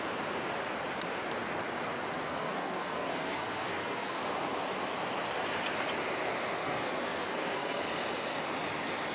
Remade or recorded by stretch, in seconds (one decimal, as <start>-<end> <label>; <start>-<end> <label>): 0.0-2.2 recorded; 2.2-4.2 remade; 4.2-6.6 recorded; 6.6-7.8 remade; 7.8-9.1 recorded